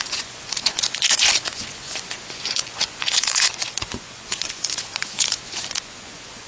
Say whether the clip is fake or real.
fake